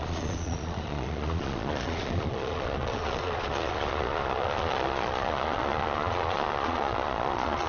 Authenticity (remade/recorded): remade